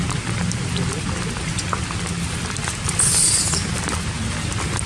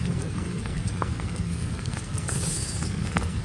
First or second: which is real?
first